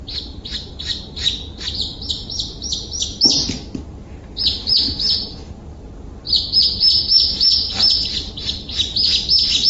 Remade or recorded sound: recorded